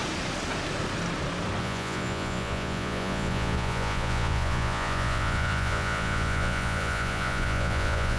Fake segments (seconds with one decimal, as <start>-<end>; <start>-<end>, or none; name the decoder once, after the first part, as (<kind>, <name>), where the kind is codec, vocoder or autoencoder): 1.6-8.2 (vocoder, Vocos)